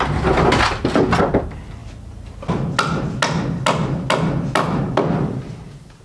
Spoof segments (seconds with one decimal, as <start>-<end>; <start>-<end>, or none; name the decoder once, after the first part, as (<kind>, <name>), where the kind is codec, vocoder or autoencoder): none